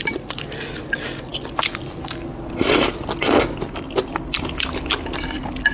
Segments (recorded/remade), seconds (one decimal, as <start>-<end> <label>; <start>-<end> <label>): 0.0-5.7 recorded